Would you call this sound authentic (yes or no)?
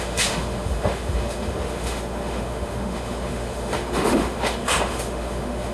no